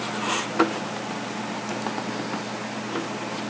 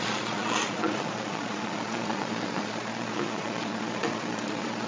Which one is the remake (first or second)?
second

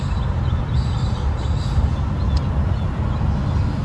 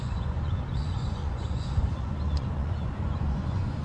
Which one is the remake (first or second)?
second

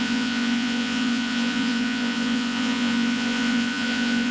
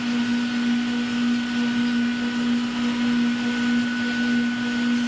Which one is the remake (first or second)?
first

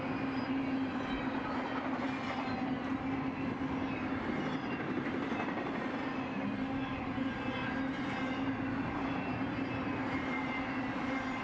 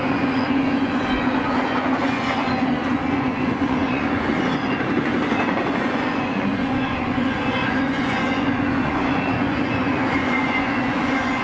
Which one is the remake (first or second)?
second